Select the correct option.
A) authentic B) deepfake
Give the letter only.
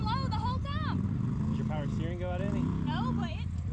A